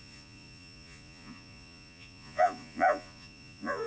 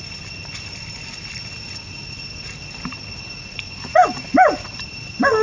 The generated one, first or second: first